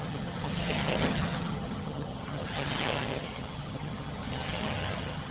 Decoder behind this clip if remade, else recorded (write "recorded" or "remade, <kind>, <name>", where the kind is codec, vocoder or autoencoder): remade, vocoder, HiFi-GAN